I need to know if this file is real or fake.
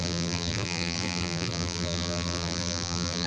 fake